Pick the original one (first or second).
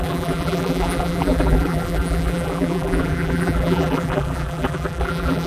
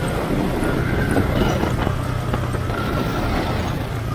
second